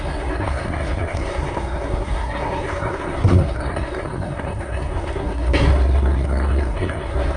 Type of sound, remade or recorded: remade